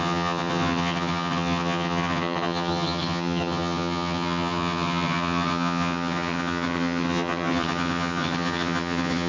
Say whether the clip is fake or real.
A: fake